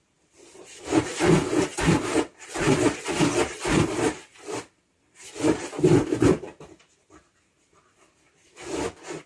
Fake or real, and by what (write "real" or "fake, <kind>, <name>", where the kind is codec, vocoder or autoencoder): real